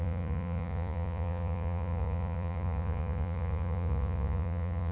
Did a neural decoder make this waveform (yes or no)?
yes